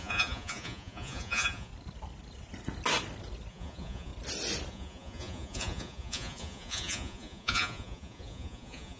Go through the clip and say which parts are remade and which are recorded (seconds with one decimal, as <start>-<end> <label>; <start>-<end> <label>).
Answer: 0.0-1.7 remade; 1.7-3.5 recorded; 3.5-4.1 remade; 4.1-4.7 recorded; 4.7-9.0 remade

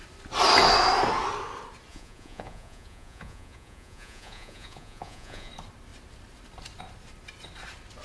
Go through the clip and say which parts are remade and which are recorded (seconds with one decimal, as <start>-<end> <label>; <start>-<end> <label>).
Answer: 0.0-1.9 recorded; 1.9-5.5 remade; 5.5-8.0 recorded

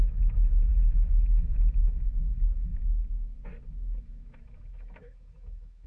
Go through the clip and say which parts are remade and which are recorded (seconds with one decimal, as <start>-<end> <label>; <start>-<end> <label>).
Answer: 0.0-2.7 remade; 2.7-4.0 recorded; 4.0-5.9 remade

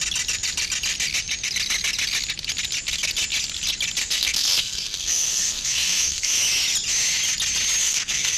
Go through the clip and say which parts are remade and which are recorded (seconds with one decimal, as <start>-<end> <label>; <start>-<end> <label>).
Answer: 0.0-4.0 recorded; 4.0-6.4 remade; 6.4-7.8 recorded; 7.8-8.4 remade